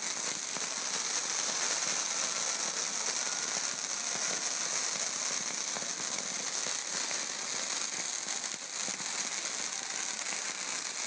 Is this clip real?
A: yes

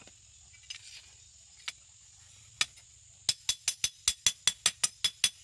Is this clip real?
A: yes